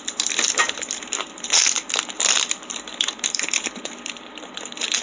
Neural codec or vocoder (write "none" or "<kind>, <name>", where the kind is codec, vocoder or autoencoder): vocoder, BigVGAN v2